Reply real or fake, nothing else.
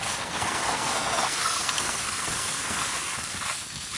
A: fake